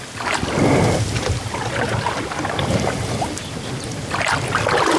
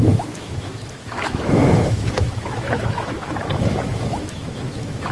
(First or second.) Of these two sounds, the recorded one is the first